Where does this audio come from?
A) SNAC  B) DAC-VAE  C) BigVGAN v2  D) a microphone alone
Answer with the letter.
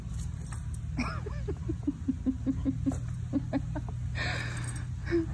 D